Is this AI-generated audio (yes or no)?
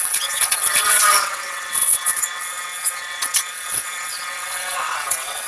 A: yes